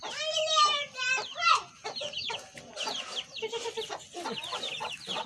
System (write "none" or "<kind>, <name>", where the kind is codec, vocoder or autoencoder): none